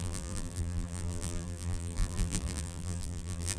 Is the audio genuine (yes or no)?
no